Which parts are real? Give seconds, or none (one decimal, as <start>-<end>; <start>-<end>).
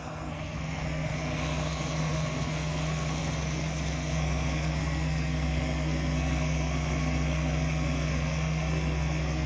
none